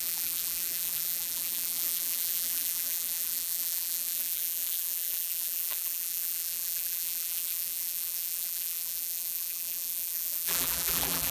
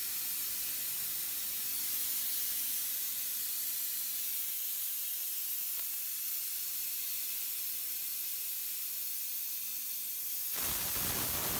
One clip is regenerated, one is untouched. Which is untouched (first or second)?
second